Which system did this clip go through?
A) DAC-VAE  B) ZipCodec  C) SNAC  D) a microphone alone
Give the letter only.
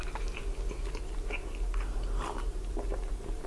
D